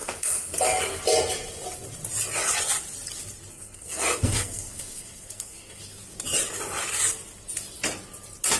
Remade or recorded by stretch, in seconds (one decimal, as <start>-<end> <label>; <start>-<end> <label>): 0.0-0.5 remade; 0.5-3.5 recorded; 3.5-5.8 remade; 5.8-8.6 recorded

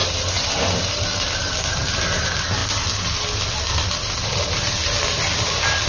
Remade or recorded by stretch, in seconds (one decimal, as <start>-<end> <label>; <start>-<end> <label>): 0.0-5.9 recorded

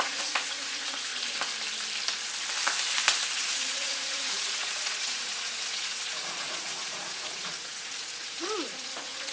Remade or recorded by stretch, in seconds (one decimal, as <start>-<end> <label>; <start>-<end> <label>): 0.0-1.1 remade; 1.1-3.4 recorded; 3.4-9.3 remade

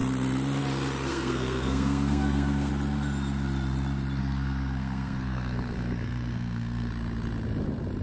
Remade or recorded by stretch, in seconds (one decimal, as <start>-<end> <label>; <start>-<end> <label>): 0.0-1.1 recorded; 1.1-2.7 remade; 2.7-4.2 recorded; 4.2-6.9 remade; 6.9-8.0 recorded